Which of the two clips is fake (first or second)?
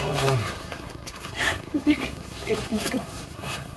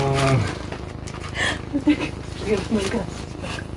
first